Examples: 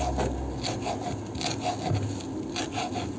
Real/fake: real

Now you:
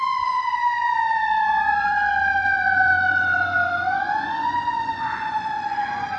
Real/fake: fake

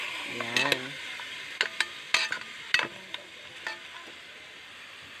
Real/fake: real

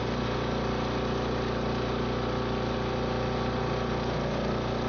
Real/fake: real